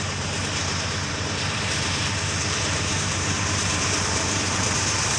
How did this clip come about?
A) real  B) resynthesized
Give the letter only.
B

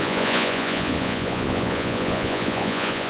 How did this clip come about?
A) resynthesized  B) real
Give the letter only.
A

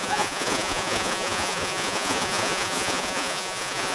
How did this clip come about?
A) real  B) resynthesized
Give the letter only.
B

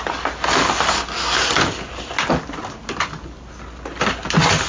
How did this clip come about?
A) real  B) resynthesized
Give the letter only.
A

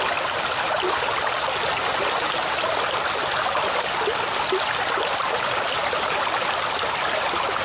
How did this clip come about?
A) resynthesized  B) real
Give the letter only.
B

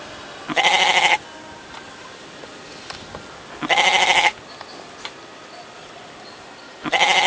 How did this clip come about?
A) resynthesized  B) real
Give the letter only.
B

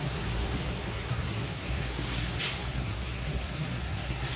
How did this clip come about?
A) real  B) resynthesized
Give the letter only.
B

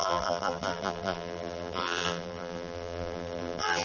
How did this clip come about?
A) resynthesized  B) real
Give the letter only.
A